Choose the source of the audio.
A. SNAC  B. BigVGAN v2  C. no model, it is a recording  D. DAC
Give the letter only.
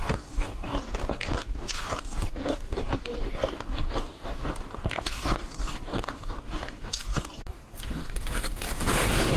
D